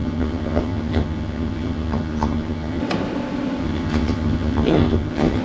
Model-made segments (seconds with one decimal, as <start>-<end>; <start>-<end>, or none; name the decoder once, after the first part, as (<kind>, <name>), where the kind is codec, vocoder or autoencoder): 0.0-2.8 (vocoder, HiFi-GAN); 3.6-5.4